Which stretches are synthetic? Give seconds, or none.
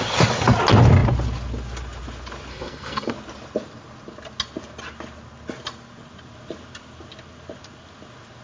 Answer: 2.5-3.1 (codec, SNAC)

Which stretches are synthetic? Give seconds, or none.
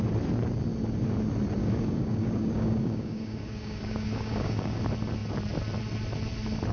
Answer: 1.6-4.8 (codec, DAC)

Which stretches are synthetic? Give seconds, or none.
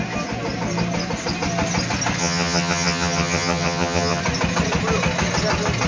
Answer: 2.2-4.2 (vocoder, HiFi-GAN)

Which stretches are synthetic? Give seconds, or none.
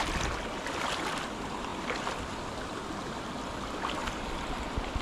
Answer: none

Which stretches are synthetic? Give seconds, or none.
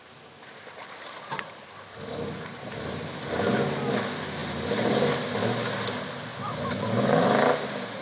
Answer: 1.3-3.5 (vocoder, BigVGAN v2); 4.4-4.9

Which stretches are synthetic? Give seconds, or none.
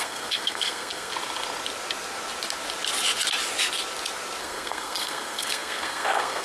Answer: 0.0-1.1 (codec, SNAC); 4.4-6.4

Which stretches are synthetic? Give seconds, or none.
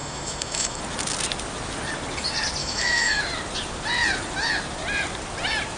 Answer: 0.0-0.8 (autoencoder, DAC-VAE); 2.6-3.2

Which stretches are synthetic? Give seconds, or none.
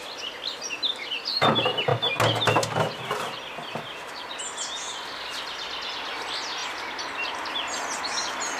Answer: none